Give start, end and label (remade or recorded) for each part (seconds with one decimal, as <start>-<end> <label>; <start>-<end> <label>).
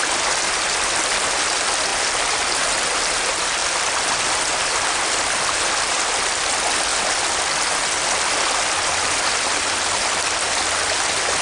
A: 0.0-11.4 recorded